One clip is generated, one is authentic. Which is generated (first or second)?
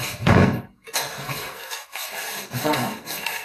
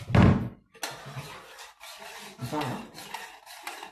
first